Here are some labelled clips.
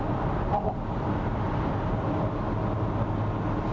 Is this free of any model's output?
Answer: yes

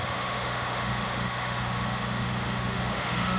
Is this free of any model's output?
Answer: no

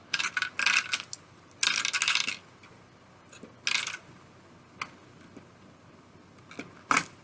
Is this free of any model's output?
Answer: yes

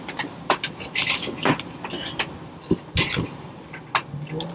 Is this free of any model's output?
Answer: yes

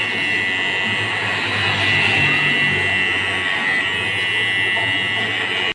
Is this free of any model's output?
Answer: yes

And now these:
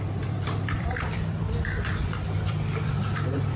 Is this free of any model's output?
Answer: no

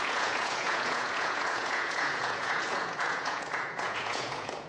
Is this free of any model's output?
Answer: no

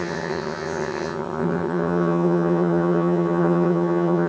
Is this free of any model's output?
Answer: no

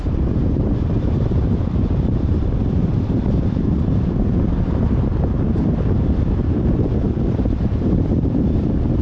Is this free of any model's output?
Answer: no